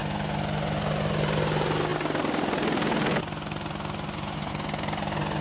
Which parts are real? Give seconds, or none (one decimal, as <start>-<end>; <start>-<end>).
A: 0.0-5.4